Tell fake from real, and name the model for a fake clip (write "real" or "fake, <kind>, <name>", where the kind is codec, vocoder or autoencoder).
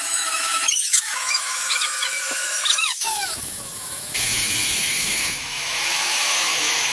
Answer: fake, autoencoder, DAC-VAE